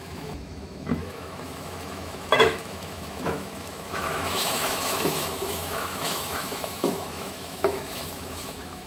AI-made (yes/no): yes